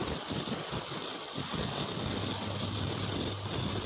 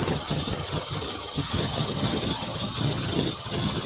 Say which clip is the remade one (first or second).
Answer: second